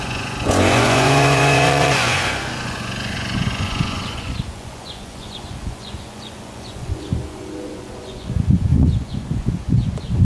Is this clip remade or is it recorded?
remade